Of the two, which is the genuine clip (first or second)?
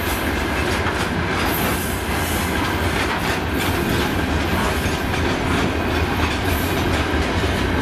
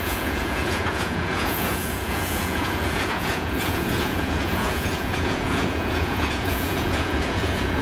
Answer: first